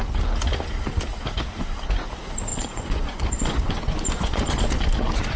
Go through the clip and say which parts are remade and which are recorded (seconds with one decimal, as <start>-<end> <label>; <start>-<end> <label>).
0.0-2.5 recorded; 2.5-4.4 remade; 4.4-5.4 recorded